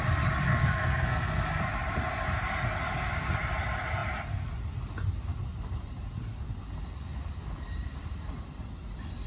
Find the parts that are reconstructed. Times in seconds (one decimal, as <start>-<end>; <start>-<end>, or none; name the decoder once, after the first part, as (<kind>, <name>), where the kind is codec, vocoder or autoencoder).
0.5-1.6 (codec, SNAC)